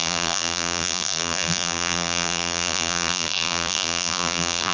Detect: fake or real fake